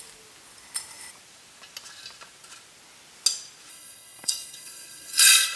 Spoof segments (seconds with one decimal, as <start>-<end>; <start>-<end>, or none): 3.7-5.6